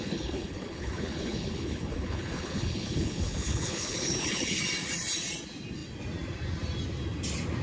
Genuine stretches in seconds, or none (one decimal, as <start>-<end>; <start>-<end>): 4.6-7.6